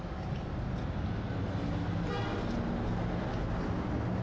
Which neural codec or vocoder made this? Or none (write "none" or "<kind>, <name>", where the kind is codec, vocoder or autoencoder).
none